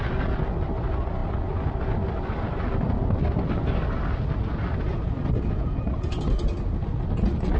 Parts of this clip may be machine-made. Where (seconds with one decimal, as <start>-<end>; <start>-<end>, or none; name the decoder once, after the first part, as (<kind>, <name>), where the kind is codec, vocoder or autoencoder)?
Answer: none

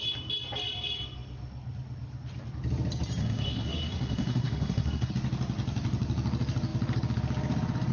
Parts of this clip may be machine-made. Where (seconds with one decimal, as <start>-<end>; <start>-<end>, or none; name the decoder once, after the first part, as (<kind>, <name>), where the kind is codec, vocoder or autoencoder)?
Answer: 3.2-5.1 (codec, SNAC)

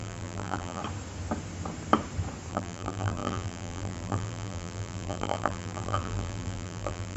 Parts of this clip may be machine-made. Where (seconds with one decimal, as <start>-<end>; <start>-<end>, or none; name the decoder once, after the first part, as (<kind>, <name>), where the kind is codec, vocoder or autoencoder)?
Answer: 0.0-0.8 (vocoder, BigVGAN v2); 2.5-7.2

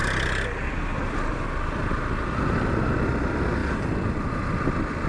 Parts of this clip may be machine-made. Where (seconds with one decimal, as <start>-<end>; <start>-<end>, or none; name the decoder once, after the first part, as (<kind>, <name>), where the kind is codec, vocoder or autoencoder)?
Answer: none

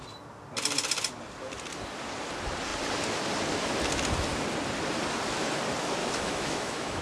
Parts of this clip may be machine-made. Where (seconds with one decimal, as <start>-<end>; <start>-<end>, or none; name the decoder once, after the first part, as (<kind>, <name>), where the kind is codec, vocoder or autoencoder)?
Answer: 6.0-7.0 (autoencoder, DAC-VAE)

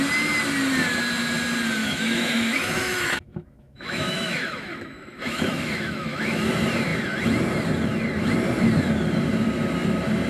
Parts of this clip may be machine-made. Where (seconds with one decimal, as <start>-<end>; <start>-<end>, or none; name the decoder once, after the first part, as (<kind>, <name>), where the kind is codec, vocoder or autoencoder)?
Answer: 1.8-6.5 (autoencoder, DAC-VAE)